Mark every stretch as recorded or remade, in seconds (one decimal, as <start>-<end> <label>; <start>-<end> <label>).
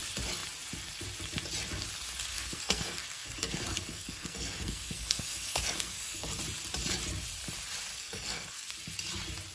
0.0-2.3 recorded; 2.3-6.3 remade; 6.3-7.9 recorded; 7.9-8.7 remade; 8.7-9.5 recorded